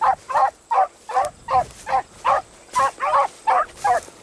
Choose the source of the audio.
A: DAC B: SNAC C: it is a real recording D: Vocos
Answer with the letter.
C